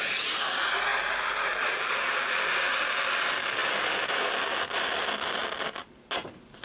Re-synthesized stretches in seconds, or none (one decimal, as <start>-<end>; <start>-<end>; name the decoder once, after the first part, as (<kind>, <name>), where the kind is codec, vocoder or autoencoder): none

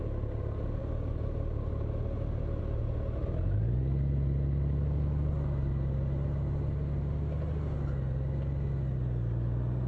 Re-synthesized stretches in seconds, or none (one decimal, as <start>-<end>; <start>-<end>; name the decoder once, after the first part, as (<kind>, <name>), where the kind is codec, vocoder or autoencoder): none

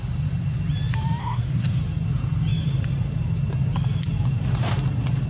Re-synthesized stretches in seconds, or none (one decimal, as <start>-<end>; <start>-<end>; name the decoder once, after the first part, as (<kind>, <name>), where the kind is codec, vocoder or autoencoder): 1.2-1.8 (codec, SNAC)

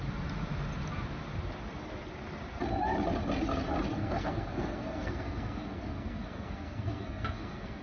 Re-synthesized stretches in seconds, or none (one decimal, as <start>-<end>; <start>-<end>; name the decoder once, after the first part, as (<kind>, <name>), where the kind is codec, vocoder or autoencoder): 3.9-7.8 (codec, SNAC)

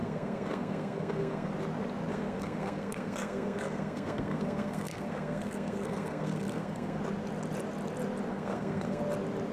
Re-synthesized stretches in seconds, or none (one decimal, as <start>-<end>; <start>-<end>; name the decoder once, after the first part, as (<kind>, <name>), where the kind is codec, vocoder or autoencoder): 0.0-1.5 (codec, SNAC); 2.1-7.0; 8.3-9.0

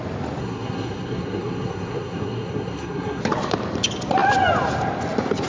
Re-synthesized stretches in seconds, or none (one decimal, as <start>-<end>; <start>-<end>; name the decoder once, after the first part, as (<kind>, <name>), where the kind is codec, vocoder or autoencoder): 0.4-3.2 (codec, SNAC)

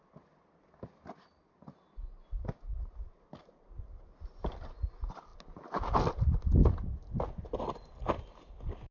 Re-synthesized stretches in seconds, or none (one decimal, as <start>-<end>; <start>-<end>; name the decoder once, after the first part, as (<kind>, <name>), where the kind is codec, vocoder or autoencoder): none

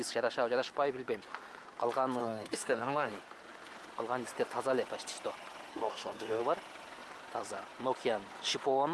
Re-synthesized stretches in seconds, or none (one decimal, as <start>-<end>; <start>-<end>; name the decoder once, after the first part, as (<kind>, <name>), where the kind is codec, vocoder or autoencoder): 2.2-3.1 (codec, SNAC); 5.7-6.4